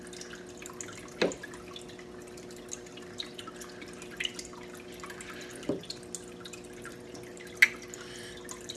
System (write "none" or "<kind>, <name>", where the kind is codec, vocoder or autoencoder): none